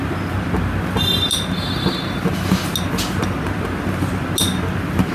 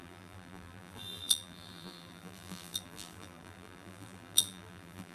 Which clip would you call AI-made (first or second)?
second